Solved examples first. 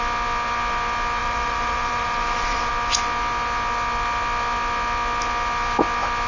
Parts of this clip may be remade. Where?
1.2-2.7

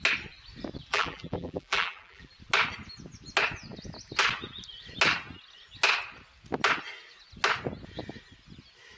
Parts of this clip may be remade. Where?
0.9-2.3

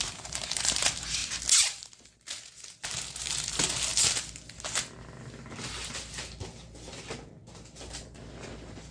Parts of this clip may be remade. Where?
0.0-1.2; 3.1-3.9; 8.5-8.9

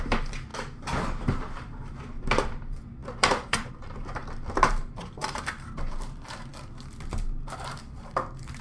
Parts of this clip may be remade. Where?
0.0-0.5; 1.2-4.2; 4.7-6.5; 7.1-8.6